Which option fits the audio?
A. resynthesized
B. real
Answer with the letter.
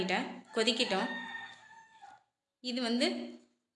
B